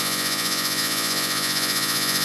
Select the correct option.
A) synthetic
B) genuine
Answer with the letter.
A